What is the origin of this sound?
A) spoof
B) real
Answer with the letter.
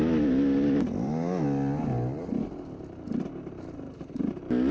B